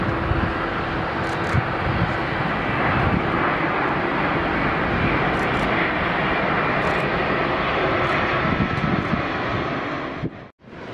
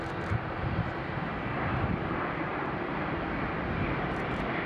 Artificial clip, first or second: second